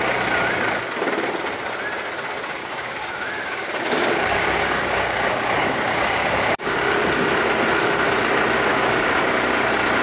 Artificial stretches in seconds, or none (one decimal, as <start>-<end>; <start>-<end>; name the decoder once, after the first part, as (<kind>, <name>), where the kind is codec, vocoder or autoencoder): 2.6-6.9 (codec, DAC); 8.7-9.2